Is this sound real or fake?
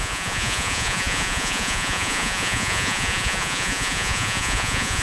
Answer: fake